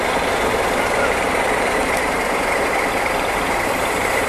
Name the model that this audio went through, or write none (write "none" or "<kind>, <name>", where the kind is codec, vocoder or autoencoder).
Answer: vocoder, BigVGAN v2